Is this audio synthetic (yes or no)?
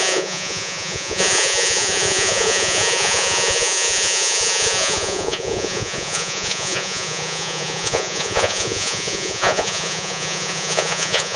yes